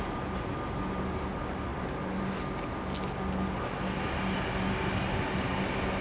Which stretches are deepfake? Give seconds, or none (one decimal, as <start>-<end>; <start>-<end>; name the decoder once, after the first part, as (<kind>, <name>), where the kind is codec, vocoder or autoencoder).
none